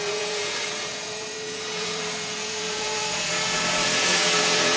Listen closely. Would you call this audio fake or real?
fake